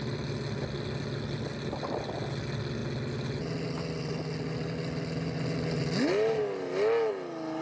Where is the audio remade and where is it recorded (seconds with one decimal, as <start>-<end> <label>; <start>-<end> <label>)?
0.0-7.6 recorded